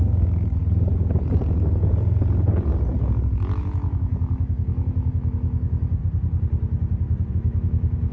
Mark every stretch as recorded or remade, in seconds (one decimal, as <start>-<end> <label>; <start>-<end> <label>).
0.0-0.6 remade; 0.6-3.6 recorded; 3.6-6.0 remade; 6.0-7.3 recorded; 7.3-8.1 remade